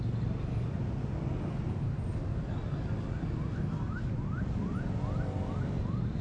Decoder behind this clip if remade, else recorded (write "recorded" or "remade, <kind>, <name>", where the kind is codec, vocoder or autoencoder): recorded